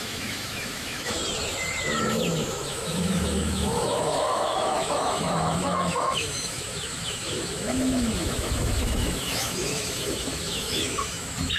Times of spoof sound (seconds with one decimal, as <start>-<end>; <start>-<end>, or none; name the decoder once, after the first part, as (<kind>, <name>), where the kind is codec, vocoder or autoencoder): 0.0-1.2 (autoencoder, DAC-VAE); 2.1-11.6